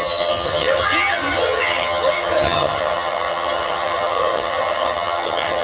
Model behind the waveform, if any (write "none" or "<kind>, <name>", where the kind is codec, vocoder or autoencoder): vocoder, HiFi-GAN